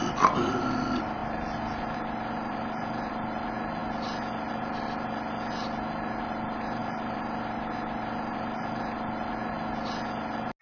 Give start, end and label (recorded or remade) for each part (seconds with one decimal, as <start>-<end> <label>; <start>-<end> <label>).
0.0-10.6 recorded